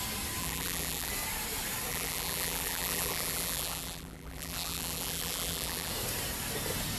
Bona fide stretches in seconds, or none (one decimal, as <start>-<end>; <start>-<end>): 0.0-0.4; 1.1-1.9; 5.9-7.0

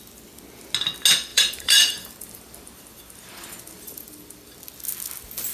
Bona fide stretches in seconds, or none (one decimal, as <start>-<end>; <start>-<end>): 0.0-1.3; 4.6-5.5

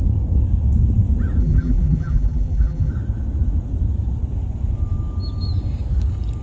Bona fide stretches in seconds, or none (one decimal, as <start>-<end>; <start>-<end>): 0.0-1.4; 2.9-6.4

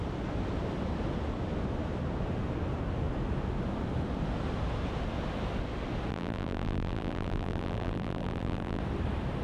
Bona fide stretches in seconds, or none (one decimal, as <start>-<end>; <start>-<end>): 0.0-6.1; 8.8-9.4

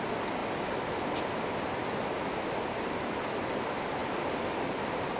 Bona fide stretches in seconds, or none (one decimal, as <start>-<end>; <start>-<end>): 0.4-2.8; 4.0-4.5